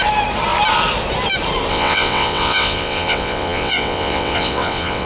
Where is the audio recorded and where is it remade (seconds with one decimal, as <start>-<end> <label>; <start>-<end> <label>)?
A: 0.0-1.7 recorded; 1.7-5.1 remade